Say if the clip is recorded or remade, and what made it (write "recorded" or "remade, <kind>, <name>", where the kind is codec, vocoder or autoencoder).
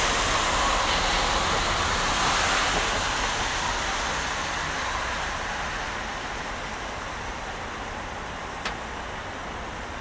recorded